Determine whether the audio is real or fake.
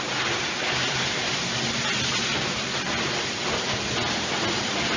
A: real